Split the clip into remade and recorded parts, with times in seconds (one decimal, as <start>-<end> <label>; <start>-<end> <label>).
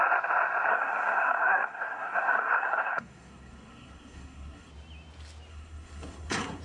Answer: 0.0-0.7 recorded; 0.7-4.7 remade; 4.7-5.5 recorded; 5.5-6.6 remade